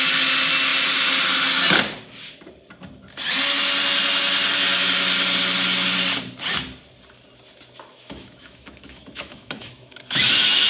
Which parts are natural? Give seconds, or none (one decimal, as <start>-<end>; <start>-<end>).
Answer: 0.0-7.9